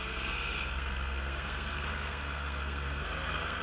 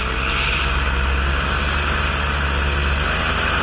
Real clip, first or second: second